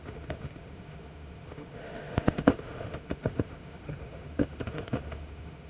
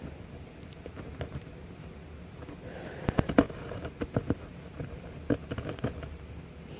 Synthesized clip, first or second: first